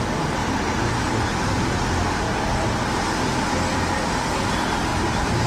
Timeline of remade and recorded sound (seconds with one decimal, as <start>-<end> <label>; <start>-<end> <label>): 0.0-0.4 remade; 0.4-3.7 recorded; 3.7-5.5 remade